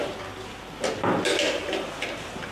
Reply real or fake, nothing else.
real